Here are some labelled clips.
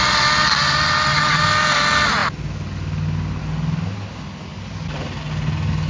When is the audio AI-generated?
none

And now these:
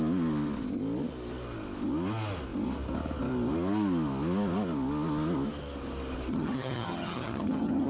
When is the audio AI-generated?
6.3-7.9 (vocoder, HiFi-GAN)

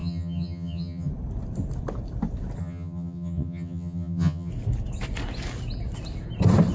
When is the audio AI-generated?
0.0-1.1 (vocoder, HiFi-GAN); 2.6-4.5

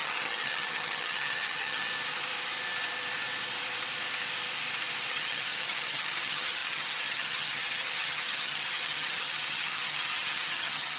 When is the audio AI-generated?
0.0-1.9 (vocoder, HiFi-GAN); 5.1-11.0

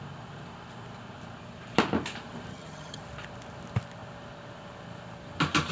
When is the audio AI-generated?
2.5-3.0 (vocoder, HiFi-GAN)

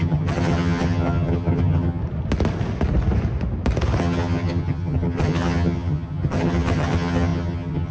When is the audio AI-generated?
0.0-2.0 (vocoder, HiFi-GAN); 4.0-7.9

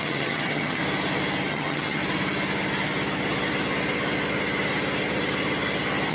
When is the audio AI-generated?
0.0-0.8 (vocoder, HiFi-GAN); 1.5-2.0